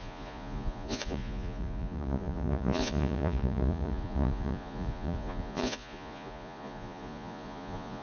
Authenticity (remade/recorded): remade